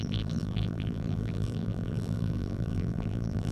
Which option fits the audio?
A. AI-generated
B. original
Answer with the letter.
A